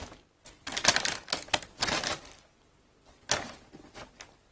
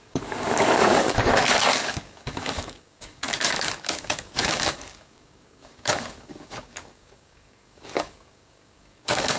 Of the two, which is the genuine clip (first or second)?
first